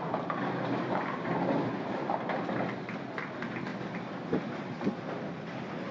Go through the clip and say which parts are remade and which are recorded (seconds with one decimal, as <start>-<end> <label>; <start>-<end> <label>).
0.0-5.9 recorded